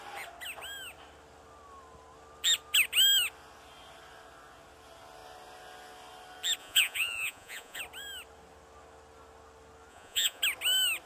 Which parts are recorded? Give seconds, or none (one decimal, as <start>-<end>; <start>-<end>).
0.0-6.6; 7.8-9.9; 10.4-11.1